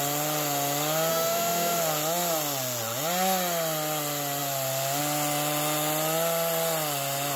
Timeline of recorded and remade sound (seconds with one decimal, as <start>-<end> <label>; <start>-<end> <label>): 0.0-1.1 recorded; 1.1-1.8 remade; 1.8-7.4 recorded